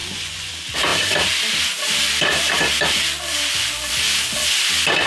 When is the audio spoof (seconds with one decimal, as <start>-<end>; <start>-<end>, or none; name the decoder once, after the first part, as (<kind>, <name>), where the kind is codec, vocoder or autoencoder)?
0.0-0.5 (vocoder, Vocos)